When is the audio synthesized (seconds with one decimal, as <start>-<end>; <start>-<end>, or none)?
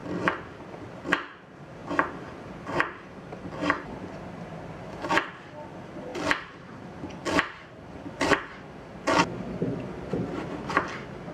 none